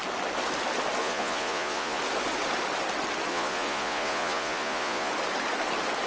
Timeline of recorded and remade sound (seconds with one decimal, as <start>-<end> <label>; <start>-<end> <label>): 0.0-1.0 recorded; 1.0-2.0 remade; 2.0-3.3 recorded; 3.3-5.1 remade; 5.1-6.1 recorded